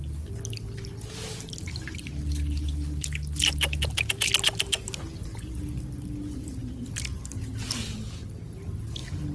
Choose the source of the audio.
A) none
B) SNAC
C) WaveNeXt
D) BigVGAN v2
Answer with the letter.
A